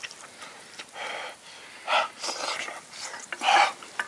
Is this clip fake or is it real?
real